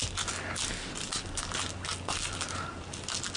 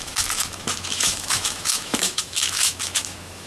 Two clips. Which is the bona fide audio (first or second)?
first